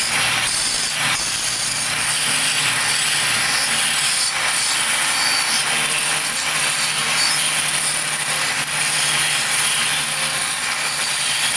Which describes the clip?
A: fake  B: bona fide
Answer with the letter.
B